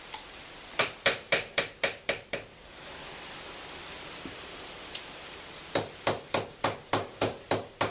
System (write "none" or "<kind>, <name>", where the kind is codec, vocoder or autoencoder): vocoder, BigVGAN v2